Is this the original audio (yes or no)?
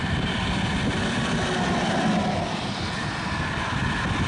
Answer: yes